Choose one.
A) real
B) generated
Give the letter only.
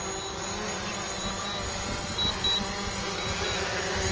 A